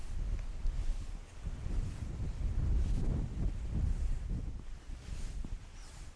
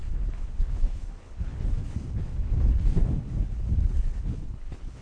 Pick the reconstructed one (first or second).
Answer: second